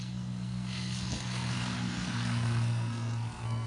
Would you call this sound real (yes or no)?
no